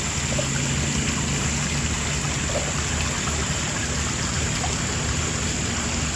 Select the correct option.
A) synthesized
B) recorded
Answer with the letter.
B